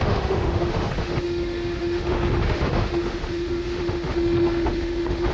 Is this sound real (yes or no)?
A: no